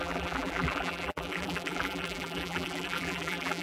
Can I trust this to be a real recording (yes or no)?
no